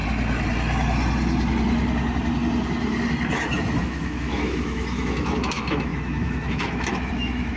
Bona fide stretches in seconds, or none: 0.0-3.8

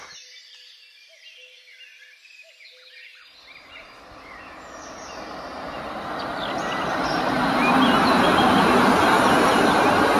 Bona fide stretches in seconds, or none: 0.0-10.2

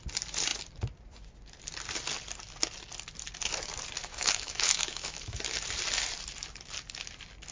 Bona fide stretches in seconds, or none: 0.0-4.0; 5.4-7.5

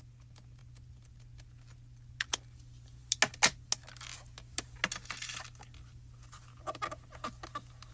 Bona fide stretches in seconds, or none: 0.0-7.9

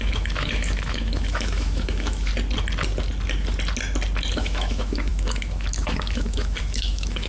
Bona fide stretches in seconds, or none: 2.3-4.3

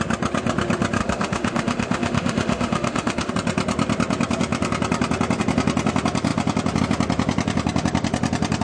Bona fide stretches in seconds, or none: 0.0-1.0; 3.3-8.6